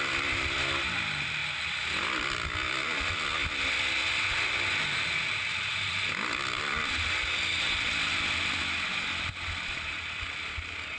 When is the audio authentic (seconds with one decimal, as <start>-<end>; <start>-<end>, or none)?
0.0-11.0